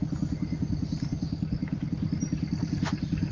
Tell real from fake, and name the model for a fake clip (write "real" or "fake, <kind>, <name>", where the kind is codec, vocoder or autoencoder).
real